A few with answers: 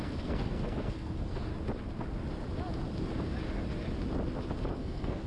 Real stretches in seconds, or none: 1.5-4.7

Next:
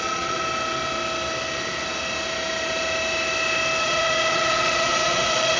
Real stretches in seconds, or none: 0.4-3.8

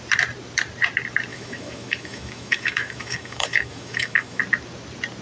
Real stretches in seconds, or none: 0.0-1.3; 4.4-5.2

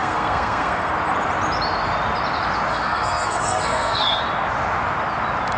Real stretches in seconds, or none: 0.9-2.7; 4.2-5.6

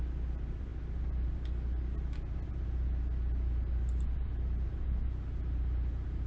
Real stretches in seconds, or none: 0.0-6.3

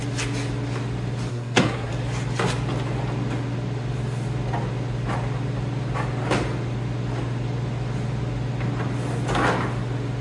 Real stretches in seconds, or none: 0.0-1.3; 1.9-10.2

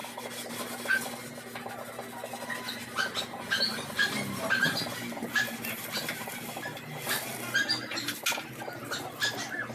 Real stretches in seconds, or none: 0.0-9.7

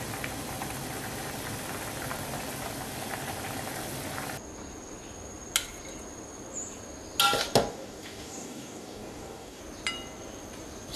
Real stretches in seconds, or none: 0.0-7.7; 9.6-11.0